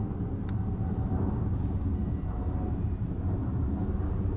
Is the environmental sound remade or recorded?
recorded